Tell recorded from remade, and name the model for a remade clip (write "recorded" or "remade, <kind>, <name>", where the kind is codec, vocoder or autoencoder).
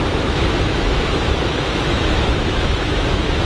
remade, autoencoder, DAC-VAE